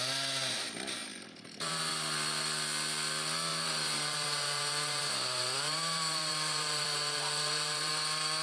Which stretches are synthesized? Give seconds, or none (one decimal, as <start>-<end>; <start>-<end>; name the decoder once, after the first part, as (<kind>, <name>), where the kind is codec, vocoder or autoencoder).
1.0-1.9 (vocoder, BigVGAN v2); 3.5-7.9